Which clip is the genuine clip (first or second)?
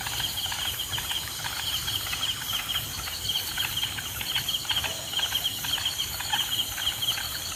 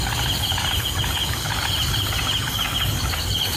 second